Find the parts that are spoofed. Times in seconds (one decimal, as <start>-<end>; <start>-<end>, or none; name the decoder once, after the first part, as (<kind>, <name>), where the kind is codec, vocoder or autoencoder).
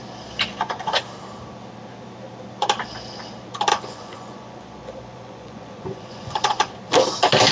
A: 0.5-1.0 (vocoder, Vocos); 3.7-6.7